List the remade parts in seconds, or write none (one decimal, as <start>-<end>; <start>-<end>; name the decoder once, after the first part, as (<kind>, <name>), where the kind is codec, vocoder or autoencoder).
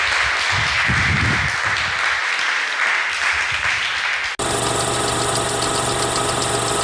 none